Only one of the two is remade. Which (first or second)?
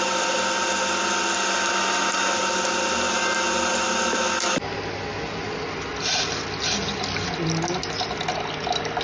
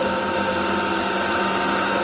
second